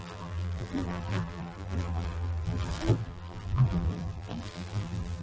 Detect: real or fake fake